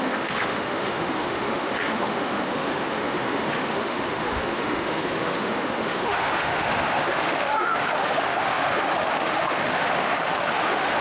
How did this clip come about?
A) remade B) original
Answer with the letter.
A